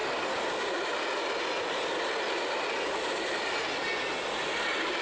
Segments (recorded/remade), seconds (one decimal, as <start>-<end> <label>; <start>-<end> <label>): 0.0-5.0 recorded